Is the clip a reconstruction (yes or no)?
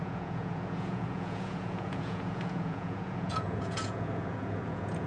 yes